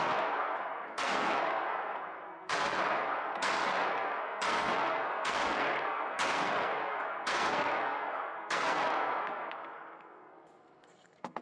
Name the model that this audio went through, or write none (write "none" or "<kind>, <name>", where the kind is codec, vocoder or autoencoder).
codec, SNAC